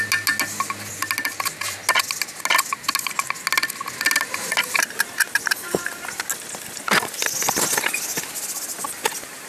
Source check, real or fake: real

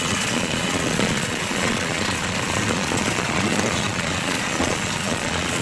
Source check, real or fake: fake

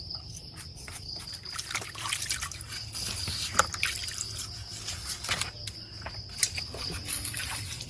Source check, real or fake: real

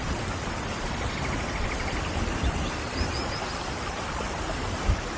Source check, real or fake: real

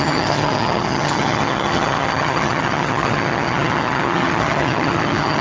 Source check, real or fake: fake